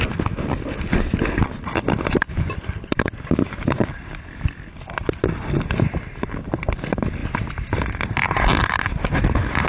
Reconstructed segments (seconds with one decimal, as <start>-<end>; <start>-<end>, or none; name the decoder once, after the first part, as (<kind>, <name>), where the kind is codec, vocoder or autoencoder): none

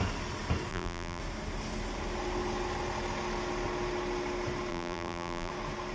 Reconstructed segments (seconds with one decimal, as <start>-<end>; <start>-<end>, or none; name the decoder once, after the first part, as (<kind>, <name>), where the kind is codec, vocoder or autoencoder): 0.7-1.2 (vocoder, BigVGAN v2); 4.7-5.5